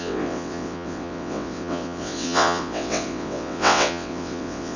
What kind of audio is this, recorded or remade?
remade